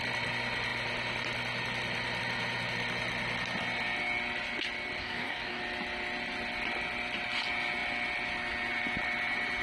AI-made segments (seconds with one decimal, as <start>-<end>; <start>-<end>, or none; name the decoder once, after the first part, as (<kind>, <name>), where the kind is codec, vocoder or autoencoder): 5.0-5.6 (codec, DAC)